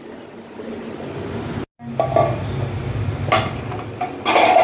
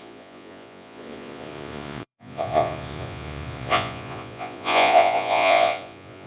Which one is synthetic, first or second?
second